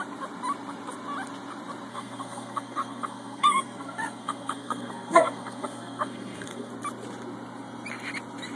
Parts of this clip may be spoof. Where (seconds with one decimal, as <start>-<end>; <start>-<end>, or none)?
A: 1.9-6.7